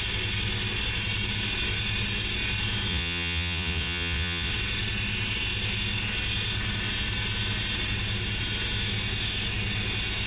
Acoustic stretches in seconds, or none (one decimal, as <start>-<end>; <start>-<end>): 0.0-2.9; 4.5-10.3